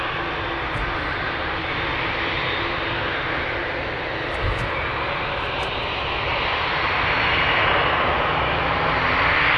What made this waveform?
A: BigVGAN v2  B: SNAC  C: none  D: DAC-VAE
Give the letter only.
C